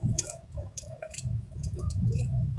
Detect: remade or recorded remade